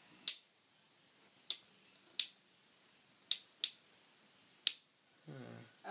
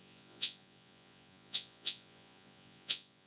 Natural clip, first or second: first